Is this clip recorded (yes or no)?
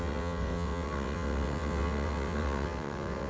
no